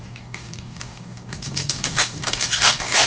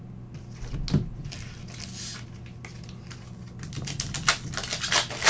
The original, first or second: second